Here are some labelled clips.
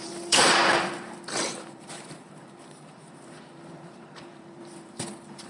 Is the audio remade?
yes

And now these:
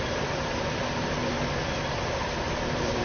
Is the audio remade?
yes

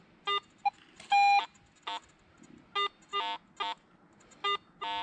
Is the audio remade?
no